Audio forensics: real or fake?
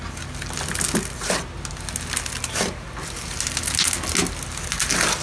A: real